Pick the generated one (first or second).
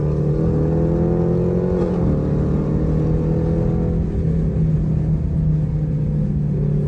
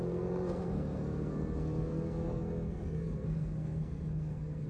second